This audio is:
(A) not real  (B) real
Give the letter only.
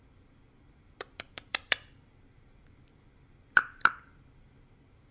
A